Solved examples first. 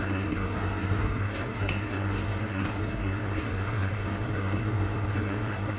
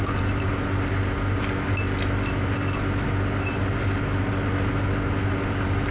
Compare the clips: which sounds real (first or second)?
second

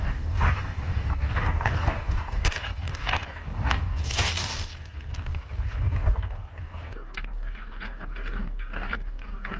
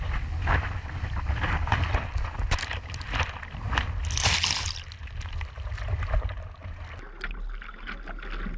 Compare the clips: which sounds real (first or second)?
second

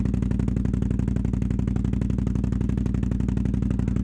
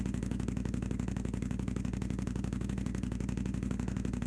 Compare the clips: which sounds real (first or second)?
first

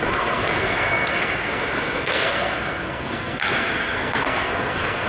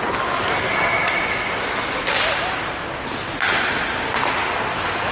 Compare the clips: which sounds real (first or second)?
second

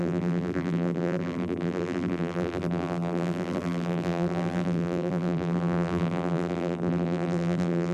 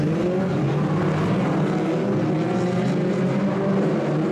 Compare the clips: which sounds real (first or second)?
second